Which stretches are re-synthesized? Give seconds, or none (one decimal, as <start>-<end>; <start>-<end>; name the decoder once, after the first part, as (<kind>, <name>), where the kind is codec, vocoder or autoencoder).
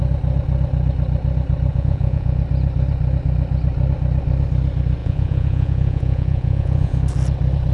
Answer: 1.7-2.4 (vocoder, Vocos); 5.0-7.0